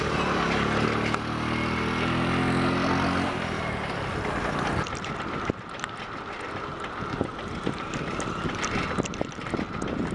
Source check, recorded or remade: recorded